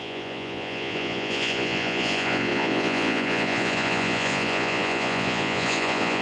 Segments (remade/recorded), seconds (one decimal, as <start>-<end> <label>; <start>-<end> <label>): 0.0-6.2 remade